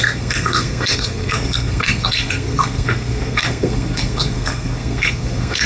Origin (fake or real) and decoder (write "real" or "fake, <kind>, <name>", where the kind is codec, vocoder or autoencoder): fake, codec, SNAC